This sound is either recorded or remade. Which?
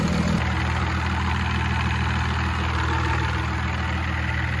recorded